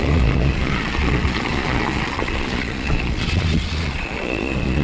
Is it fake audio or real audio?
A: fake